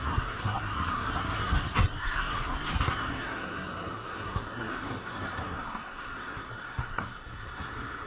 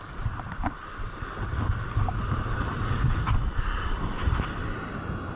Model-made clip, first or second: first